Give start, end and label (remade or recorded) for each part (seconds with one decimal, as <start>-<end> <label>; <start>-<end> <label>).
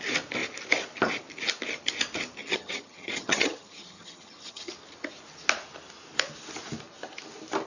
0.0-2.4 recorded; 2.4-4.7 remade; 4.7-7.7 recorded